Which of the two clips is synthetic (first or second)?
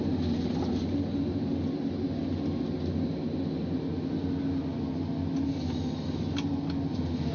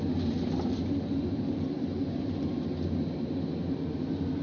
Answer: second